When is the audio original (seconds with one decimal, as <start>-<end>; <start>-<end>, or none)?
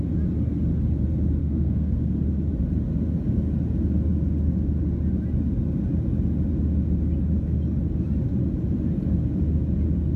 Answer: 0.0-1.4; 2.1-10.2